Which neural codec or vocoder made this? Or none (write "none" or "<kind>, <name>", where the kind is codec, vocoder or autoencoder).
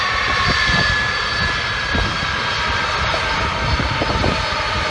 none